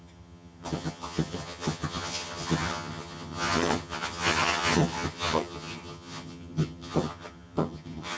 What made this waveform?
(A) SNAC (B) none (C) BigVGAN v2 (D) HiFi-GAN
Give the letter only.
D